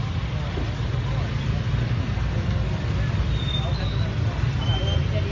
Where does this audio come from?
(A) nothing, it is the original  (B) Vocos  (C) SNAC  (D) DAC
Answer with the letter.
A